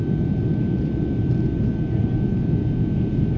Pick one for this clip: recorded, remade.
recorded